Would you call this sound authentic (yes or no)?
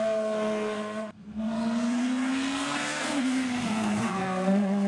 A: no